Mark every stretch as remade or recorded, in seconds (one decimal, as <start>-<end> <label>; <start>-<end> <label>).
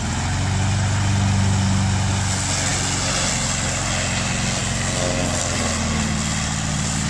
0.0-7.1 recorded